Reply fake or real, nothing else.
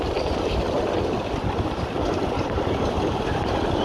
real